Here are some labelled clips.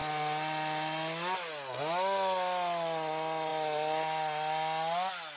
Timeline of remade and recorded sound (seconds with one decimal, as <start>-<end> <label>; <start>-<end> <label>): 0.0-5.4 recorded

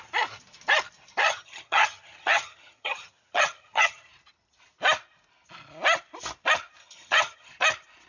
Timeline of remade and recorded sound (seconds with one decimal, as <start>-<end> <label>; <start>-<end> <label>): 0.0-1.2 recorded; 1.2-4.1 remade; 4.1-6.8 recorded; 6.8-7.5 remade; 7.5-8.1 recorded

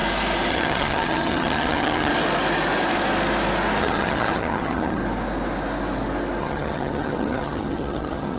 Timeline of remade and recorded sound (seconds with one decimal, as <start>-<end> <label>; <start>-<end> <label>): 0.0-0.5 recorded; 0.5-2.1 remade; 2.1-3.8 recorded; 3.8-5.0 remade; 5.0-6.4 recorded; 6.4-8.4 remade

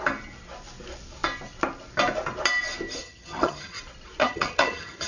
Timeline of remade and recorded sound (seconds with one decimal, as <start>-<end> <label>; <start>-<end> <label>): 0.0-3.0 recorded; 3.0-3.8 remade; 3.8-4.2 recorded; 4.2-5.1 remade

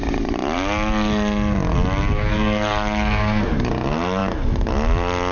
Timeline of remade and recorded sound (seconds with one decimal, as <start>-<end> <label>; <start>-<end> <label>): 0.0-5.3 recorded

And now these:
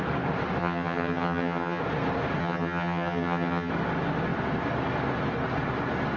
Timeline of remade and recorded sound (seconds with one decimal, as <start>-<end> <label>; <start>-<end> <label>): 0.0-0.6 recorded; 0.6-1.8 remade; 1.8-2.4 recorded; 2.4-3.7 remade; 3.7-6.2 recorded

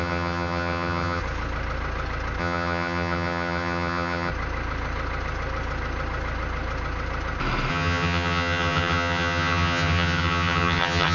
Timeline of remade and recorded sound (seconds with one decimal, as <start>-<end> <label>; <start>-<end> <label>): 0.0-1.2 remade; 1.2-2.4 recorded; 2.4-4.3 remade; 4.3-7.7 recorded; 7.7-11.1 remade